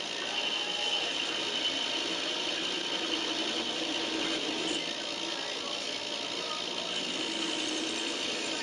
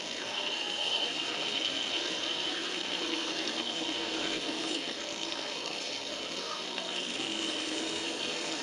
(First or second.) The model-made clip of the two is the second